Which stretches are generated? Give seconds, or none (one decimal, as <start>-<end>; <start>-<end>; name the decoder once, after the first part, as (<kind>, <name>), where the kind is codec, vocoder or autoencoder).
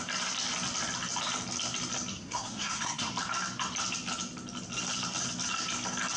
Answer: 2.1-3.1 (codec, SNAC)